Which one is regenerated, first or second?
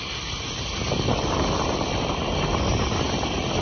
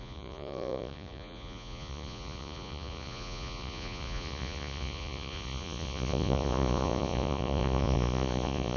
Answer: second